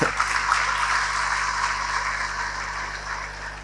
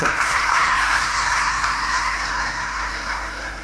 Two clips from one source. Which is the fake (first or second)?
second